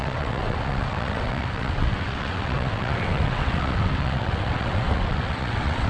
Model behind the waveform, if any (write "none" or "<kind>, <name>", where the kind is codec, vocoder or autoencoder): vocoder, WaveNeXt